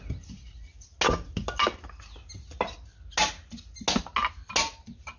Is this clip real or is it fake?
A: real